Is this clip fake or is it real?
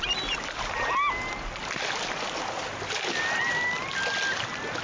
real